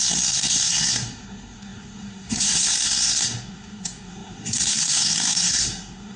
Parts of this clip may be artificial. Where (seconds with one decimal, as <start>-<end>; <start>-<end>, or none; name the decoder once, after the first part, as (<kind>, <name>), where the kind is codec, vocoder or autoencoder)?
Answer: 0.0-6.2 (codec, SNAC)